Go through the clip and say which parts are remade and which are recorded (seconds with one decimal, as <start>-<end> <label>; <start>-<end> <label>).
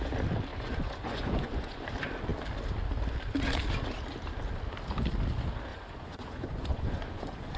0.0-0.5 recorded; 0.5-1.9 remade; 1.9-5.7 recorded; 5.7-7.6 remade